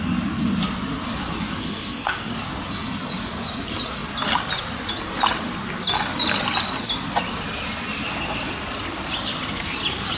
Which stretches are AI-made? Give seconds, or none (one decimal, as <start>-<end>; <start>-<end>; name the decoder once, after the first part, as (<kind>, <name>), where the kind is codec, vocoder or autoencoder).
1.6-2.3 (codec, SNAC)